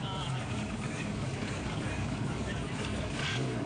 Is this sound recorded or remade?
remade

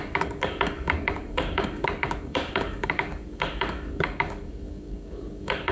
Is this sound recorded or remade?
remade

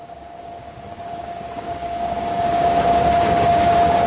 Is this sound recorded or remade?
remade